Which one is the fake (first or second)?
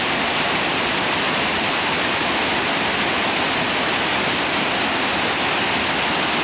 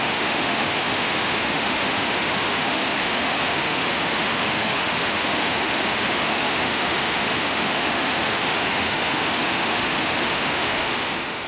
second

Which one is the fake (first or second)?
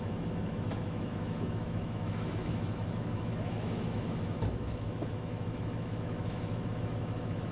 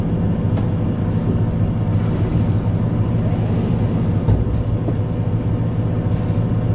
first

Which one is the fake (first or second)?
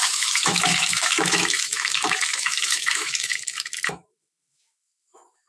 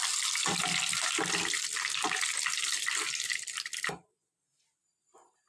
first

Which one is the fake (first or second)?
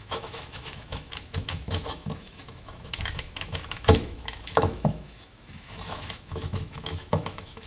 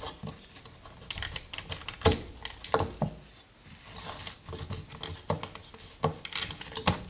first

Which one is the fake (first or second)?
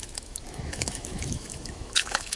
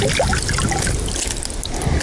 first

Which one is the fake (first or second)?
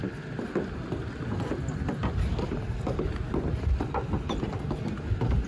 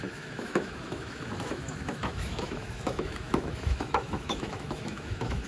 second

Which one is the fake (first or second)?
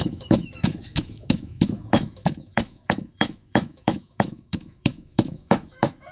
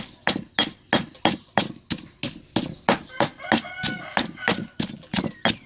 first